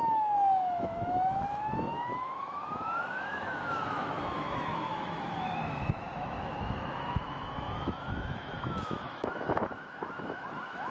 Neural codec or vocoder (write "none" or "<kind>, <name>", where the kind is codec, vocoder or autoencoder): autoencoder, DAC-VAE